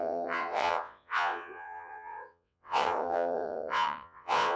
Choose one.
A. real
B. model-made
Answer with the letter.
B